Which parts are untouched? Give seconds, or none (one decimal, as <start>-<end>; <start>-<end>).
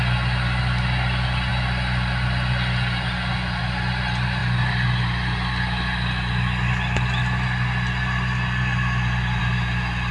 0.0-10.1